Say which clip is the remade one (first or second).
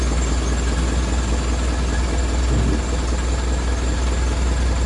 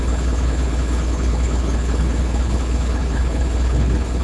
second